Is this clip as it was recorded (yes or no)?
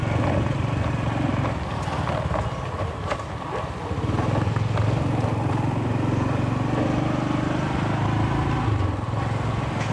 yes